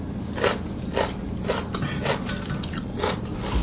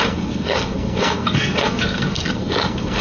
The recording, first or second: first